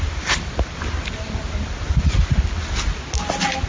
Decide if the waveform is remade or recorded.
recorded